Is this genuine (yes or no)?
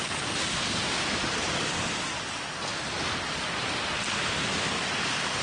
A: yes